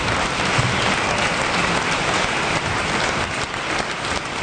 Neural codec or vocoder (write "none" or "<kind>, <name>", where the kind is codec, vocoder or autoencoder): none